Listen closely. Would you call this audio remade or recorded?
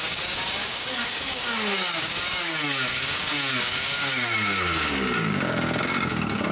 remade